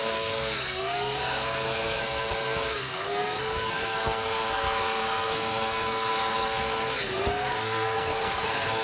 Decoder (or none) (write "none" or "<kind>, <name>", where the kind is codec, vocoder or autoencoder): codec, SNAC